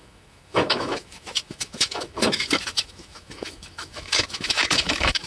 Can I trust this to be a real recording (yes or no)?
no